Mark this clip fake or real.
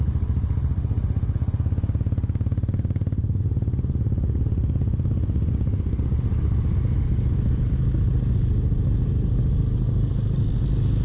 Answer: real